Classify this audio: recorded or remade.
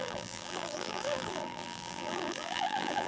remade